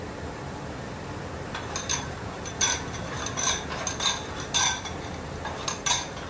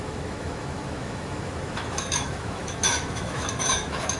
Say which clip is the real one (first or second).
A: first